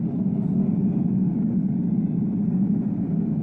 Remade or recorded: recorded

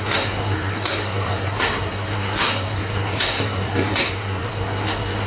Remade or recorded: remade